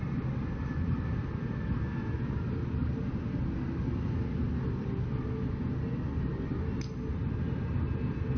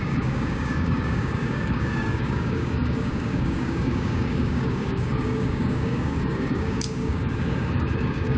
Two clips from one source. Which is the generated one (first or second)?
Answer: second